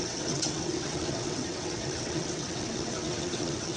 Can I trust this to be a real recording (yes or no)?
no